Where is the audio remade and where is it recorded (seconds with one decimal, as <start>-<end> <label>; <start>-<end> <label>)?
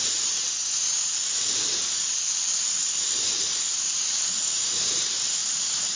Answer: 0.0-6.0 remade